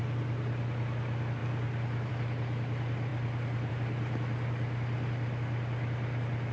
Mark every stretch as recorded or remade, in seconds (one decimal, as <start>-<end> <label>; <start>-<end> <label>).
0.0-6.5 recorded